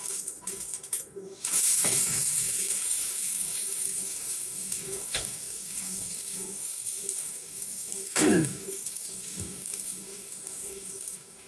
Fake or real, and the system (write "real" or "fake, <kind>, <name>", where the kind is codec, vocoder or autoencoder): fake, codec, DAC